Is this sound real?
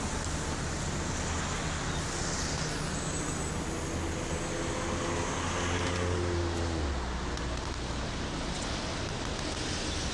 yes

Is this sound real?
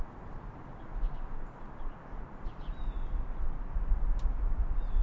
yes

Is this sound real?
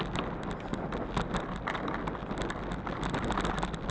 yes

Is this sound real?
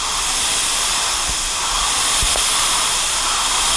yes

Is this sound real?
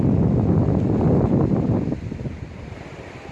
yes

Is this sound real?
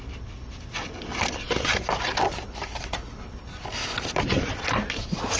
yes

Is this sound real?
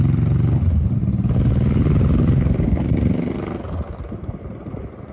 yes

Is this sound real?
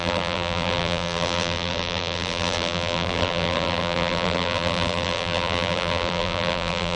no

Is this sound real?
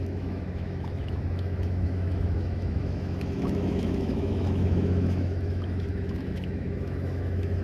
no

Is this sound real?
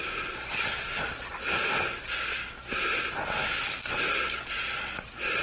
yes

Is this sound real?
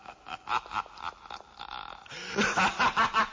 yes